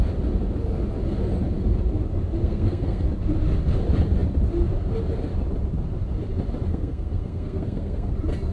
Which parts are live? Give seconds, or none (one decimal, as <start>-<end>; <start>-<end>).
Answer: 0.0-2.4; 3.1-6.7; 8.1-8.5